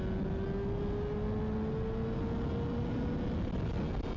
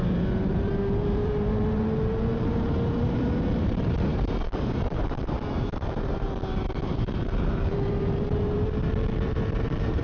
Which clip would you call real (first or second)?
first